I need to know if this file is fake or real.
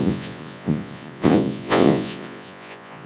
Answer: fake